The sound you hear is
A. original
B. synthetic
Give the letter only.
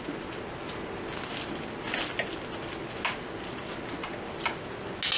A